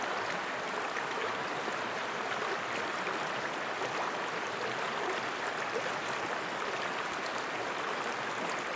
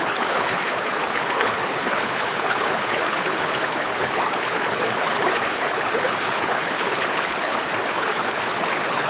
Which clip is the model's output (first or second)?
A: second